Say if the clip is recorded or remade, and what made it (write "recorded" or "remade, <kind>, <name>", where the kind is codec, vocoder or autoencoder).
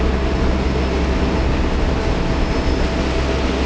recorded